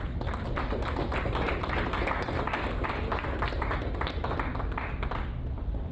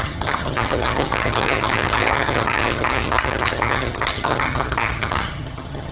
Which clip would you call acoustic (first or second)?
first